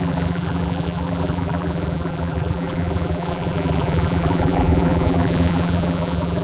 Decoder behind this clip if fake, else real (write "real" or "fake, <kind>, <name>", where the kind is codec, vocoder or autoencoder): fake, vocoder, BigVGAN v2